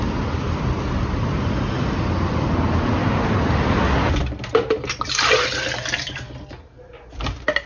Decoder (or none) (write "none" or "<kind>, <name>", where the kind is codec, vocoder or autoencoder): none